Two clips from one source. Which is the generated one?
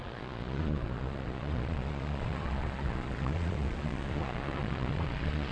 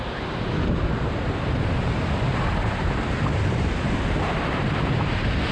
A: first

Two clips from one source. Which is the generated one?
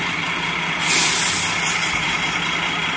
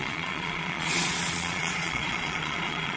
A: second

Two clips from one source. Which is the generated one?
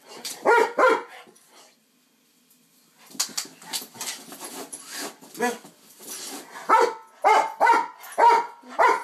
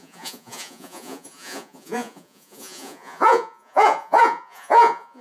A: second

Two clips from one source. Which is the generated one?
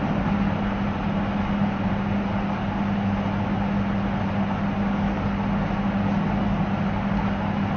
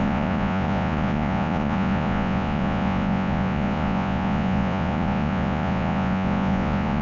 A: second